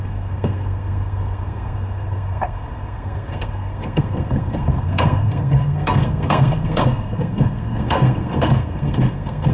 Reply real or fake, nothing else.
fake